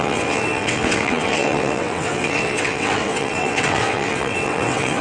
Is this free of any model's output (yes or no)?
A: no